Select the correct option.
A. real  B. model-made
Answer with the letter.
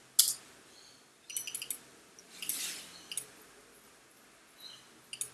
A